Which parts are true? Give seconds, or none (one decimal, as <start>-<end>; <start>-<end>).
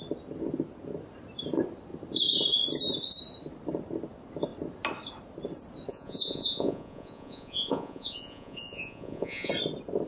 0.0-5.9; 9.5-10.1